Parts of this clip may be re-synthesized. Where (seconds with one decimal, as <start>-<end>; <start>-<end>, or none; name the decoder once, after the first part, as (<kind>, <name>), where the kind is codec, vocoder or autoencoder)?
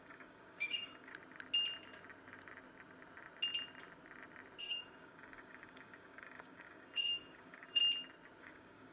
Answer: 0.0-1.1 (codec, DAC); 4.6-7.8; 8.4-8.9